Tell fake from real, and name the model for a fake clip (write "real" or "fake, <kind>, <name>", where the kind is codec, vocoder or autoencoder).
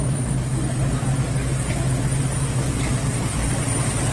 real